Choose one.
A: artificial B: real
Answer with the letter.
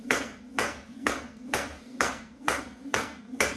A